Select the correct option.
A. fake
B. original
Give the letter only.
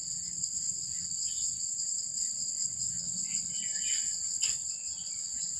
A